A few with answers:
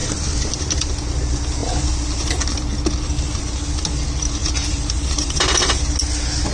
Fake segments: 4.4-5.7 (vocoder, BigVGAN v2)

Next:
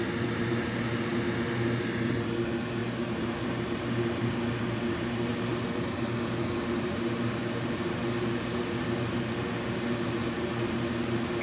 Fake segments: 2.8-4.3 (vocoder, BigVGAN v2); 5.3-8.6

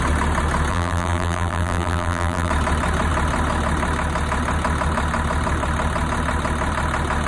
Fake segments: 0.7-2.5 (vocoder, BigVGAN v2)

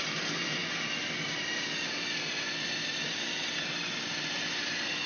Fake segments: none

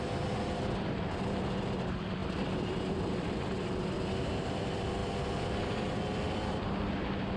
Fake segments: 0.0-5.0 (vocoder, BigVGAN v2); 6.5-7.4

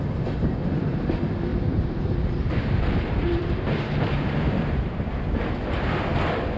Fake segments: 1.5-5.5 (vocoder, BigVGAN v2)